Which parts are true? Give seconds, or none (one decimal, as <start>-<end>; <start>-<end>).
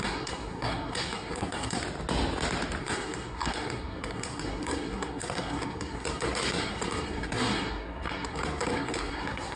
1.8-2.8